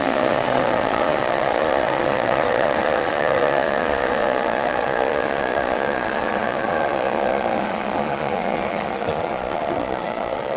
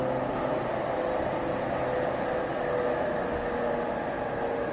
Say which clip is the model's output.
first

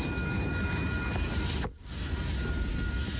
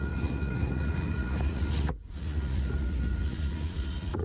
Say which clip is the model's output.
second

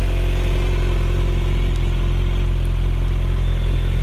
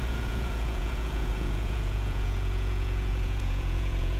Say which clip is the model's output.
second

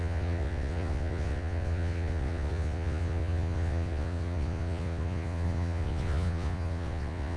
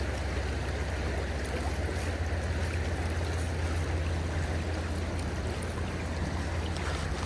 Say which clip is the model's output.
first